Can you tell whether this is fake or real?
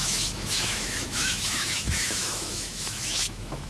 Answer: fake